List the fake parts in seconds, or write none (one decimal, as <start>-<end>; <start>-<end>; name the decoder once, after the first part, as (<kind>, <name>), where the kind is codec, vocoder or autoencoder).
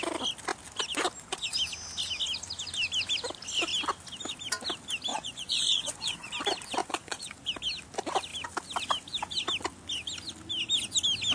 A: 5.1-6.3 (vocoder, Vocos); 6.8-7.4